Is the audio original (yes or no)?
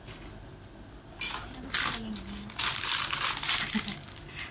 yes